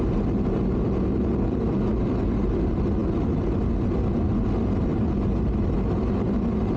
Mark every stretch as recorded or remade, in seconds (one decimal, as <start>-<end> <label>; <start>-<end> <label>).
0.0-6.8 recorded

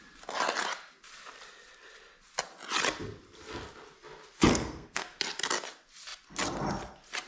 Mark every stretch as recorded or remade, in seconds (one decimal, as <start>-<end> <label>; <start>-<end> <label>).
0.0-4.5 recorded; 4.5-5.2 remade; 5.2-7.3 recorded

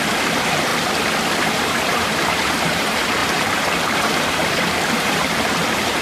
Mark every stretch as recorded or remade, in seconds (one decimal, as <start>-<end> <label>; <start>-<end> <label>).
0.0-0.7 remade; 0.7-1.4 recorded; 1.4-6.0 remade

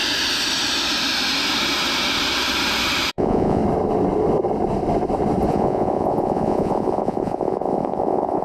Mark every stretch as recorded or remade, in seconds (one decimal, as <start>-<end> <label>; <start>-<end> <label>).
0.0-3.1 recorded; 3.1-3.6 remade; 3.6-5.5 recorded; 5.5-8.4 remade